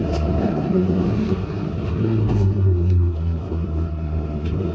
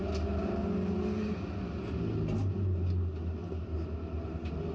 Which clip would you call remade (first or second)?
first